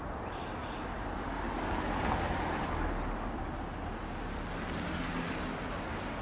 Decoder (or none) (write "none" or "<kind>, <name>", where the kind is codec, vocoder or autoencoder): none